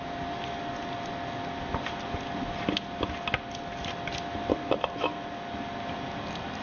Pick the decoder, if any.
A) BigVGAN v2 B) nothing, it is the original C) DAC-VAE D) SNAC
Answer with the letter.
B